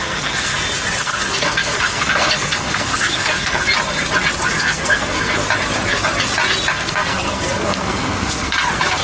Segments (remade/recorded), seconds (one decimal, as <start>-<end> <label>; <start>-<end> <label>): 0.0-0.5 remade; 0.5-1.0 recorded; 1.0-3.6 remade; 3.6-4.6 recorded; 4.6-5.4 remade; 5.4-6.7 recorded; 6.7-9.0 remade

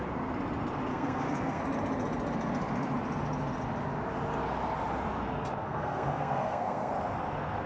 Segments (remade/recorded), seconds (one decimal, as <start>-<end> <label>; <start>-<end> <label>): 0.0-0.9 recorded; 0.9-1.6 remade; 1.6-5.6 recorded; 5.6-6.9 remade; 6.9-7.7 recorded

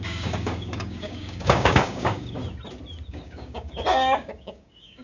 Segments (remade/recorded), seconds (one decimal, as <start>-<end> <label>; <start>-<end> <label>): 0.0-2.4 remade; 2.4-3.1 recorded; 3.1-5.0 remade